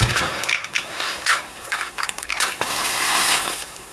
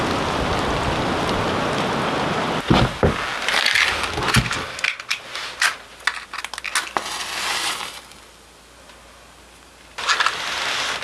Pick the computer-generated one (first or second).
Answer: first